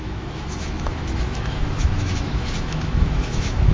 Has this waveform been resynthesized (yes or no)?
yes